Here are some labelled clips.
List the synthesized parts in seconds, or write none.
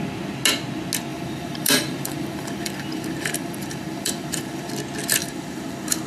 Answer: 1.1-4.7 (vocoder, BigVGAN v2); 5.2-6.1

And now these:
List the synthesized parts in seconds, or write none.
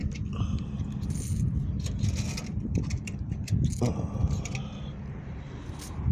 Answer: 0.0-3.7 (vocoder, BigVGAN v2)